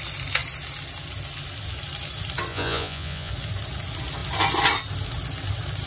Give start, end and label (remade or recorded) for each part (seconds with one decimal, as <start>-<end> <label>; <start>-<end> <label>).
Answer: 0.0-2.5 recorded; 2.5-3.3 remade; 3.3-5.9 recorded

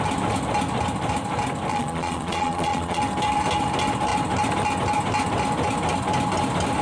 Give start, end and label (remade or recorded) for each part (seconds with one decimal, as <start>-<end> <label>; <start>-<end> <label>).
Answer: 0.0-1.7 recorded; 1.7-3.0 remade; 3.0-6.8 recorded

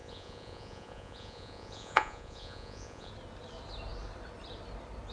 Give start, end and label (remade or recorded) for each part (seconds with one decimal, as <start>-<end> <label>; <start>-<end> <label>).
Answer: 0.0-3.1 remade; 3.1-5.1 recorded